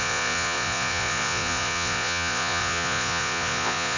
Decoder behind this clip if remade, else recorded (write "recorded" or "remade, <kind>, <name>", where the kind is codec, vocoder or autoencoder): remade, vocoder, Vocos